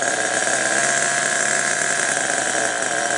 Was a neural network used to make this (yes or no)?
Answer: no